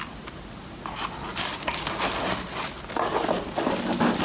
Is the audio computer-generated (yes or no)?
no